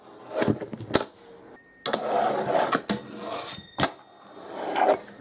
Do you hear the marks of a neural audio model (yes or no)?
no